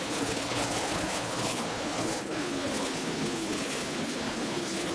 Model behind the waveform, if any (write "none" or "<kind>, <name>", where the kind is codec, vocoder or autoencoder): codec, HILCodec